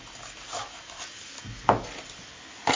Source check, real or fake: real